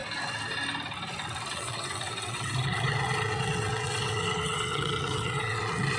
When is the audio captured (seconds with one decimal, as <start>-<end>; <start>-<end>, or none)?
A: 0.0-1.5

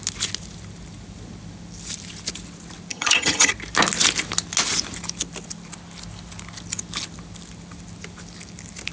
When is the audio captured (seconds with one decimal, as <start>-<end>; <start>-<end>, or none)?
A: 0.0-2.9; 3.5-8.9

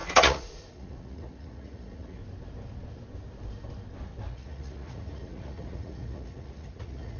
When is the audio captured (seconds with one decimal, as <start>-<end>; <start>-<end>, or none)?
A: 2.2-4.3

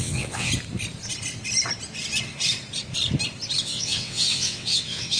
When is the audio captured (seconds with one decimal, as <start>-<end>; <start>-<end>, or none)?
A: 0.5-3.6